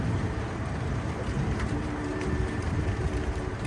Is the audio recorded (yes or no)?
no